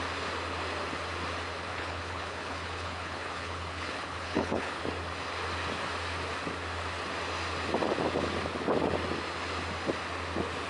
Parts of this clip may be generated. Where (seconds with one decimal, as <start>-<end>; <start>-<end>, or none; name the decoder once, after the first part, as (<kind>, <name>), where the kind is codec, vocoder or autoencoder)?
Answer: 1.7-4.8 (codec, HILCodec)